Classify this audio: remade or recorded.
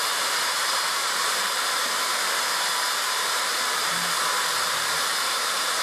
remade